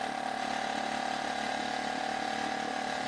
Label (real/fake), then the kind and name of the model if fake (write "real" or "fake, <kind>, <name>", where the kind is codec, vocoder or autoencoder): real